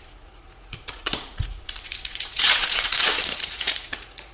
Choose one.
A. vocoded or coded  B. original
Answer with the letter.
A